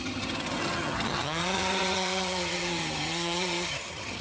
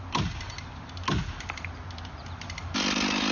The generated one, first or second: first